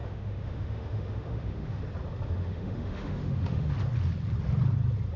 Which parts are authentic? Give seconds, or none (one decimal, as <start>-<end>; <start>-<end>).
1.8-2.4; 3.7-5.2

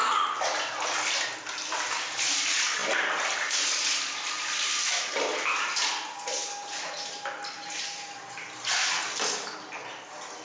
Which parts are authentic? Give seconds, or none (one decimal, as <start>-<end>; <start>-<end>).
0.0-10.4

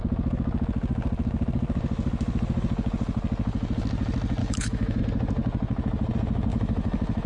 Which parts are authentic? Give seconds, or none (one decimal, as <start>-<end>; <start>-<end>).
0.0-4.4; 5.0-6.5

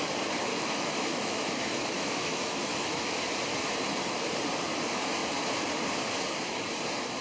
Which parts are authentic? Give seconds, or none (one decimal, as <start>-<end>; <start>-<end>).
0.0-0.5; 3.1-7.2

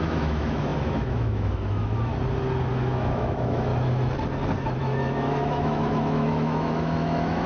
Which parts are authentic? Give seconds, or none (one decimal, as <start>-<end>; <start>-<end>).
2.1-2.7; 3.7-4.8

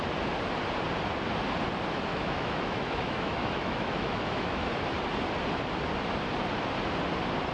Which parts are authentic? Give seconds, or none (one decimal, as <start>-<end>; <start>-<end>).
0.0-2.1; 4.7-7.5